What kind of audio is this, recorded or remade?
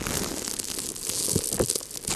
recorded